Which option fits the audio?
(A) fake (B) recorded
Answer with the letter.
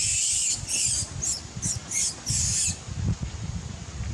B